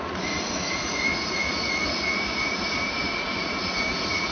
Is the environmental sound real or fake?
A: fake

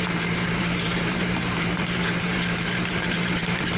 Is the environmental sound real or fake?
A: fake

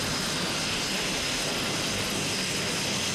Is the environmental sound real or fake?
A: real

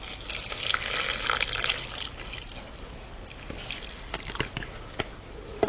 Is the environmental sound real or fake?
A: real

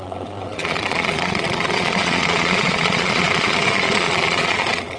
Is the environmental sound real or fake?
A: fake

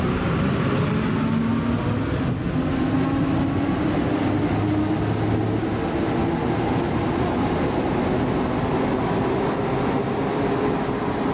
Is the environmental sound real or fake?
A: real